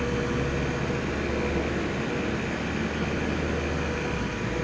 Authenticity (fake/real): real